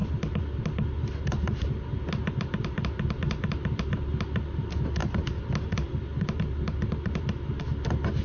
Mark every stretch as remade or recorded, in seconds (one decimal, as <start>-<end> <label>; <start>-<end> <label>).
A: 0.0-8.2 recorded